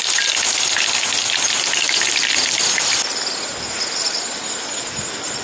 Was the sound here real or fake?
real